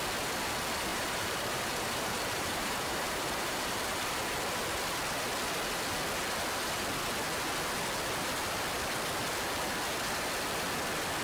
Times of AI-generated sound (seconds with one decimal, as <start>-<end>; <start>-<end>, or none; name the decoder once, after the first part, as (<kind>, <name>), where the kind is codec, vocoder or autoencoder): 0.9-4.2 (vocoder, BigVGAN v2)